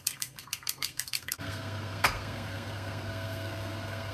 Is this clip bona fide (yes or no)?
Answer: no